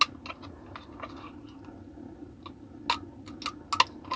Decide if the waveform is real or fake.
real